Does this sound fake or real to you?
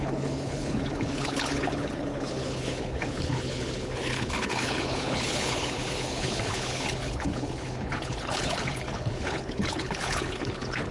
fake